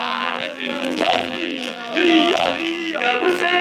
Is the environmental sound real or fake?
fake